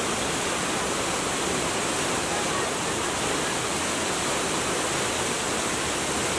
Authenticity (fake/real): real